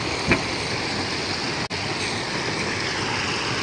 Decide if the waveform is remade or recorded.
recorded